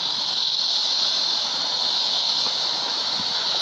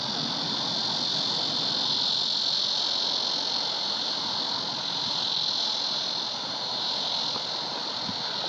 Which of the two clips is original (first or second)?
second